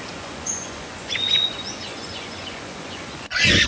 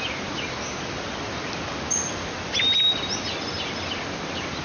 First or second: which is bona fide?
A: second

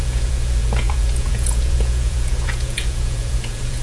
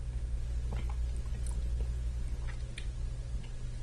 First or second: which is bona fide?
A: second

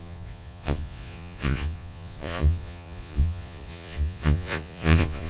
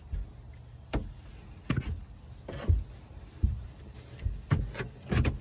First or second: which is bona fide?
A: second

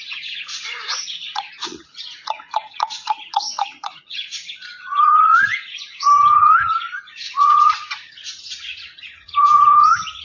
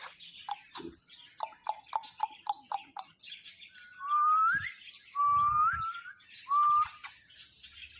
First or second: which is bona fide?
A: second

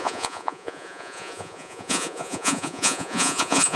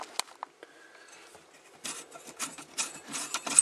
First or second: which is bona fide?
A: second